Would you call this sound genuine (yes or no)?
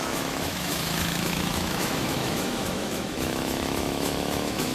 no